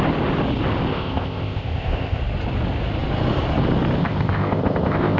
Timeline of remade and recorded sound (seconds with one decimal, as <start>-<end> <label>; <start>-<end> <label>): 0.0-0.9 recorded; 0.9-2.2 remade; 2.2-4.0 recorded; 4.0-5.2 remade